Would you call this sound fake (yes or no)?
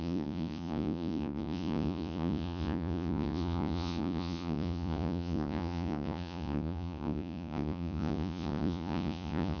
yes